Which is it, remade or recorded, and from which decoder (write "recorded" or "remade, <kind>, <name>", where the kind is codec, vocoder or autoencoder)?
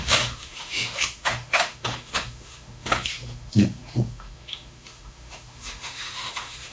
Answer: remade, autoencoder, DAC-VAE